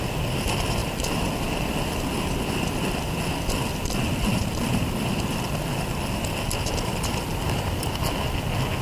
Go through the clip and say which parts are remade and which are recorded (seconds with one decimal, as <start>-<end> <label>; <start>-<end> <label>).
0.0-0.8 recorded; 0.8-5.9 remade; 5.9-6.9 recorded; 6.9-7.5 remade; 7.5-8.8 recorded